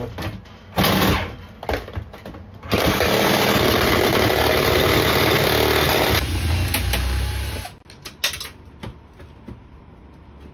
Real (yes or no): yes